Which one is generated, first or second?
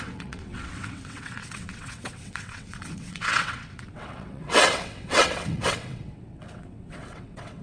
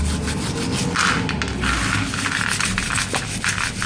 first